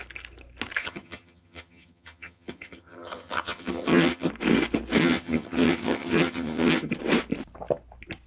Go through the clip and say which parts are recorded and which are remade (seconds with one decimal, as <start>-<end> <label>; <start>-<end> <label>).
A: 0.0-0.8 recorded; 0.8-4.3 remade; 4.3-5.0 recorded; 5.0-6.9 remade; 6.9-8.3 recorded